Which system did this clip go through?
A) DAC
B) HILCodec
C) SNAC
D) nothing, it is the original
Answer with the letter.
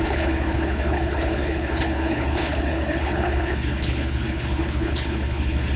B